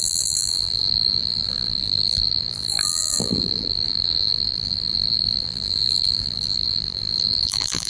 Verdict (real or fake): fake